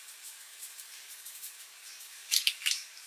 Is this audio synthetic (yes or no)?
yes